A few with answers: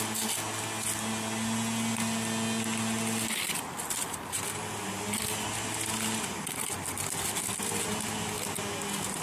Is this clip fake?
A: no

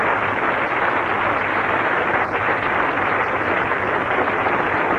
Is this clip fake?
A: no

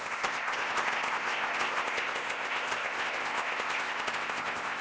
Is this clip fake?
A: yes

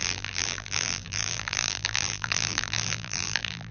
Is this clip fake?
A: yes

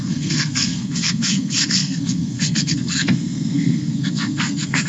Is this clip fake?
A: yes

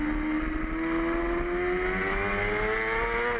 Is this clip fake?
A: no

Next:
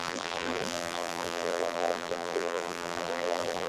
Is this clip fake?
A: yes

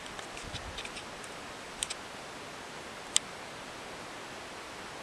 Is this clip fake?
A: no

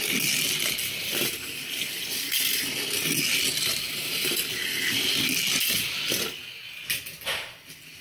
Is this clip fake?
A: no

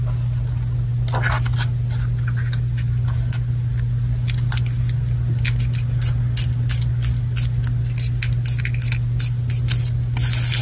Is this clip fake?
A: no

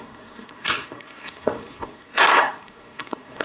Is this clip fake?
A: yes